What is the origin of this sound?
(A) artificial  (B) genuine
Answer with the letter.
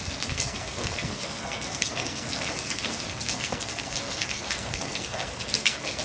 A